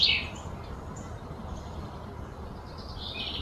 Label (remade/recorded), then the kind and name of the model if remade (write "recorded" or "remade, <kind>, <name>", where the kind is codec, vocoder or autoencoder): recorded